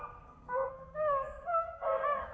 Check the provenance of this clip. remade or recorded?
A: remade